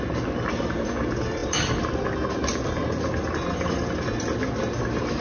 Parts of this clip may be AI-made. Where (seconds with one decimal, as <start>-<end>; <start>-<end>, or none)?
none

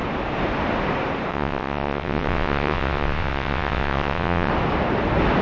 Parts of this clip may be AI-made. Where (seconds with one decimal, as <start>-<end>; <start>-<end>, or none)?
1.3-4.5

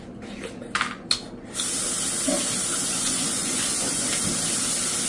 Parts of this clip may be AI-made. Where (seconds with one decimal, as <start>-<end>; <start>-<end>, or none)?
2.8-4.1

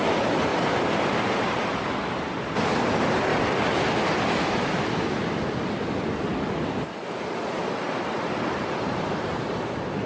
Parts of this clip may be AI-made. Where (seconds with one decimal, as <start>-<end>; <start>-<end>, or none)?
0.0-3.3; 7.1-10.1